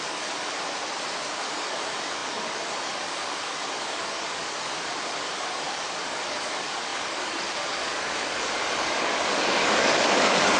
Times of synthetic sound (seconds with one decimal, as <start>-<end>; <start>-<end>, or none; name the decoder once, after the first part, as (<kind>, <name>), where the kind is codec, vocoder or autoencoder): 0.0-0.6 (codec, DAC); 1.3-10.6